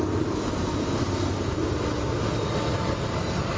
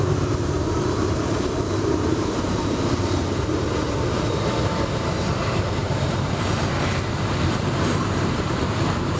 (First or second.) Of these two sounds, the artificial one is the second